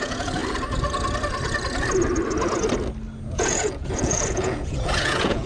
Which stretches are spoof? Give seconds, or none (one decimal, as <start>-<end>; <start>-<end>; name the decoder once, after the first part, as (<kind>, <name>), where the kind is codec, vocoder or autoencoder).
0.0-0.4 (vocoder, Vocos); 3.3-5.5